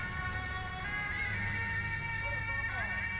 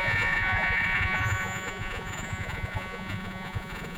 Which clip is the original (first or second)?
first